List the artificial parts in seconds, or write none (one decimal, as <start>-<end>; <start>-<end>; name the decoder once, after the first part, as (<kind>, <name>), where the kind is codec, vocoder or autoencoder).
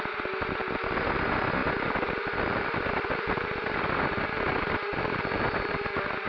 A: none